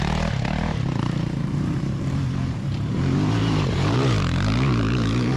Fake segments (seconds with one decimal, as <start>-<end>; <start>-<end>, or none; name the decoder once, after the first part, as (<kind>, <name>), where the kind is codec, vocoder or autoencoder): 0.0-5.4 (vocoder, BigVGAN v2)